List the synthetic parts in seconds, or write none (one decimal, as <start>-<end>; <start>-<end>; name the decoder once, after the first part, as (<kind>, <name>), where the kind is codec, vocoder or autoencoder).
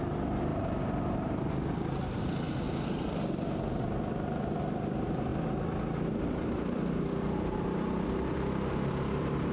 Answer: 0.0-0.5 (vocoder, BigVGAN v2); 4.7-5.3; 6.2-9.5